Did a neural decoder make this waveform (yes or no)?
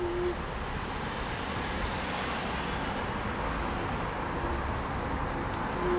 no